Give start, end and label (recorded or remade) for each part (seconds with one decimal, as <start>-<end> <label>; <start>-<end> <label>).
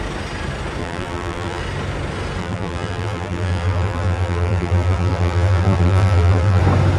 0.0-0.8 recorded; 0.8-1.6 remade; 1.6-2.4 recorded; 2.4-6.6 remade; 6.6-7.0 recorded